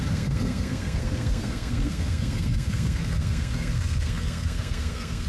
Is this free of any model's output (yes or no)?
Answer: no